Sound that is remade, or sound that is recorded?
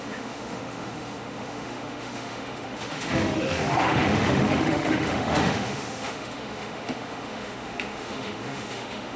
remade